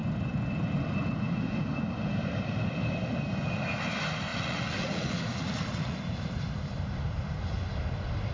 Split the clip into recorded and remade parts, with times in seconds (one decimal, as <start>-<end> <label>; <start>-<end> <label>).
0.0-4.3 recorded; 4.3-6.0 remade; 6.0-8.3 recorded